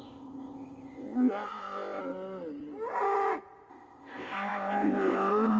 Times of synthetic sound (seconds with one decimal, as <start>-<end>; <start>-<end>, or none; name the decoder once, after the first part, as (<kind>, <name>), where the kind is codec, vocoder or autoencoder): 0.0-2.0 (codec, ZipCodec); 3.7-5.6